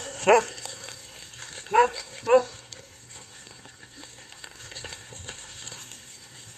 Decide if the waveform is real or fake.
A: fake